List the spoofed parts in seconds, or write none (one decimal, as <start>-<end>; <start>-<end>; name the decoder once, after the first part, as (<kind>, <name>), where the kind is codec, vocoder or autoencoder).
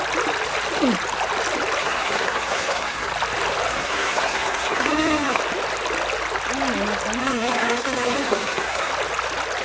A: 1.8-3.1 (codec, SNAC); 3.7-5.4; 7.2-8.9